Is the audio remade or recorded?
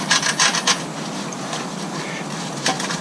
recorded